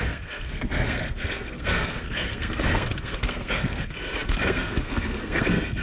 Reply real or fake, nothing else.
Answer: fake